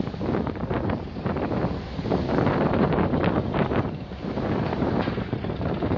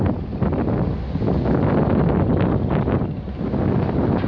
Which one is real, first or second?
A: second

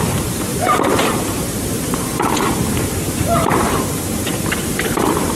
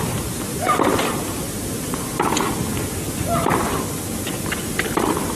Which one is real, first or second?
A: second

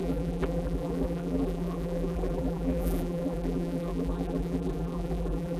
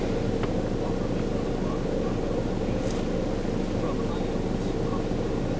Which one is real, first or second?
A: second